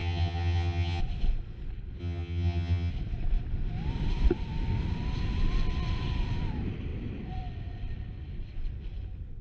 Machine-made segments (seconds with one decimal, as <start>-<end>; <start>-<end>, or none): 0.0-1.0; 2.0-2.9